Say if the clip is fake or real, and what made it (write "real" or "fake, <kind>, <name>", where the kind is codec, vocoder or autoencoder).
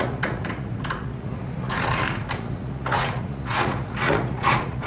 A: fake, vocoder, Vocos